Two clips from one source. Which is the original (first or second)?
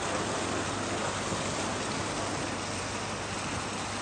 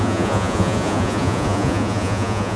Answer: first